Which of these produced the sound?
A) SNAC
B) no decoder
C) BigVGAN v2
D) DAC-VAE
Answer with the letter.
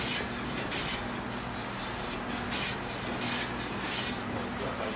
B